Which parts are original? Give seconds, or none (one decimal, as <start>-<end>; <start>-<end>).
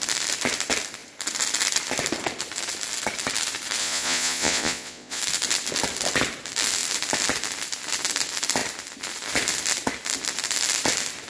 0.0-3.8; 5.2-11.3